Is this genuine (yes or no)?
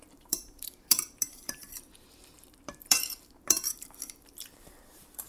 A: no